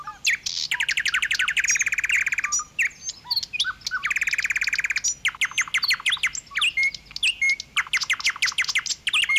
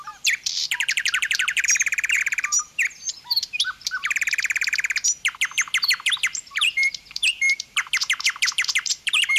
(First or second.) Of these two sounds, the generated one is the second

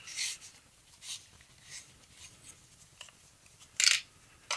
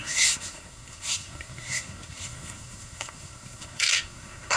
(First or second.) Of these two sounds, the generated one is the second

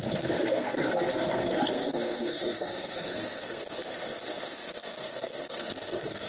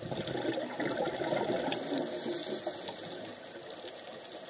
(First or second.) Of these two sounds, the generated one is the first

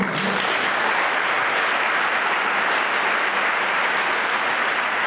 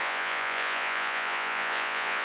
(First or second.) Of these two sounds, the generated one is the second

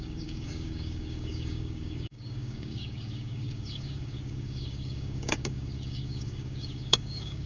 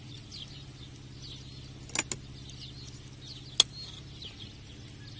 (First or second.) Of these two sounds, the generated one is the first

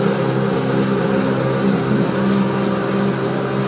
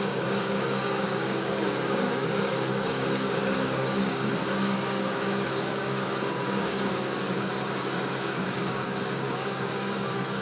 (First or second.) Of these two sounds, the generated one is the second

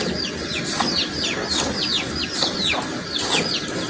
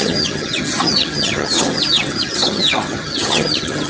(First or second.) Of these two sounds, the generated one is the second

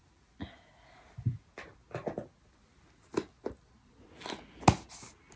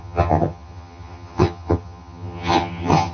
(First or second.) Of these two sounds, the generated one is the second